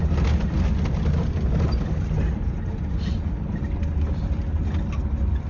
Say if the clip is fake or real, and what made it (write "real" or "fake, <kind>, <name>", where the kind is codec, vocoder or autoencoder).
real